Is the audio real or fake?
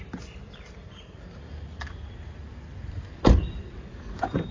fake